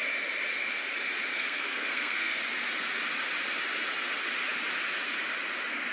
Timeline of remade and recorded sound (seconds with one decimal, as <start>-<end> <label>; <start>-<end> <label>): 0.0-1.3 recorded; 1.3-2.4 remade; 2.4-5.9 recorded